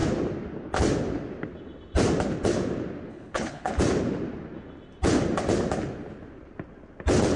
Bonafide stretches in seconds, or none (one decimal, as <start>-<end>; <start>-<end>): 0.0-3.1; 3.7-7.4